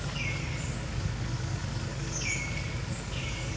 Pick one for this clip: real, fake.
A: fake